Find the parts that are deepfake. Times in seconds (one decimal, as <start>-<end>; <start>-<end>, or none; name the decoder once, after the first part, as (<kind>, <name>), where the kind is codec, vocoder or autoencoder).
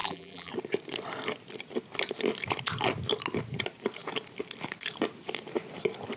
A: 0.0-0.5 (vocoder, BigVGAN v2)